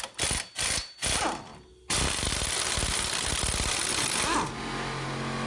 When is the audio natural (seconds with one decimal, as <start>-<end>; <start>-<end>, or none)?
0.0-5.5